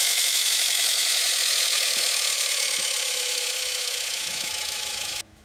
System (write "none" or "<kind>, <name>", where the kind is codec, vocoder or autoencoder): autoencoder, DAC-VAE